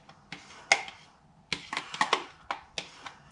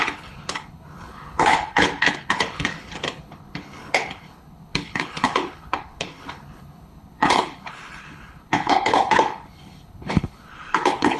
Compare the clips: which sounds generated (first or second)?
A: second